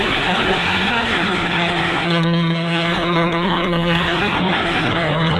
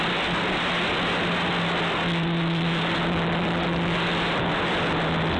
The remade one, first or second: first